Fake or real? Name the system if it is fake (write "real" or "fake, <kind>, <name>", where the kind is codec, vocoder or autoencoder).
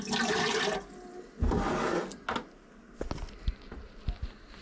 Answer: real